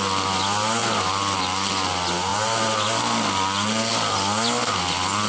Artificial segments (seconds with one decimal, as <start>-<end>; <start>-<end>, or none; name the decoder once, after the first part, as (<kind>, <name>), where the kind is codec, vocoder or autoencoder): none